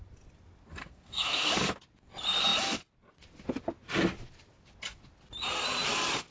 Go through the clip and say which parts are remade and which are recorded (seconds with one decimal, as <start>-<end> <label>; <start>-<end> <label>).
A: 0.0-0.8 recorded; 0.8-1.5 remade; 1.5-6.3 recorded